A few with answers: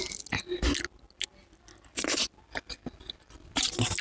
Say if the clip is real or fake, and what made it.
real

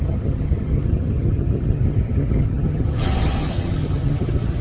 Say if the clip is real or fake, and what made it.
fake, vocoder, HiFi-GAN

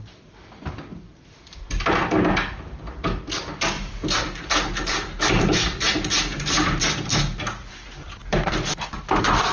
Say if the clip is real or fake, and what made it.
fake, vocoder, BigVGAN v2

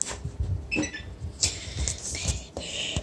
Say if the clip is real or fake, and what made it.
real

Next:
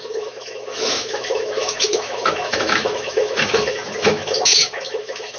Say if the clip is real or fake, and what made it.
fake, autoencoder, DAC-VAE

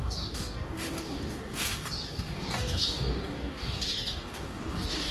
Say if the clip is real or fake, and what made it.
fake, codec, DAC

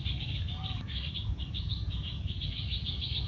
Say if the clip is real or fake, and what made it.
fake, codec, DAC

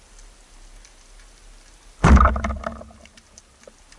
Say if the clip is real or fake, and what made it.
real